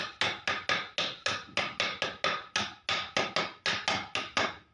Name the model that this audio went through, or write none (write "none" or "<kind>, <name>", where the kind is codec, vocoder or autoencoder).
none